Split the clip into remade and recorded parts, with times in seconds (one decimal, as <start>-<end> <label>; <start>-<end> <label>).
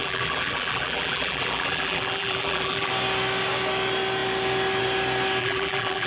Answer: 0.0-2.9 remade; 2.9-5.4 recorded; 5.4-6.1 remade